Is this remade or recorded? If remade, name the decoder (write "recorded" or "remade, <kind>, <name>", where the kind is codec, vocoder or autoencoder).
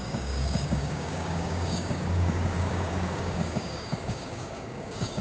remade, codec, DAC